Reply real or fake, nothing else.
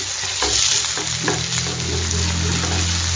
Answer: real